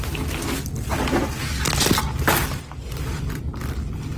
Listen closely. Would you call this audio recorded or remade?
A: recorded